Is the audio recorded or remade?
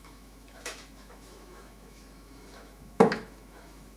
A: remade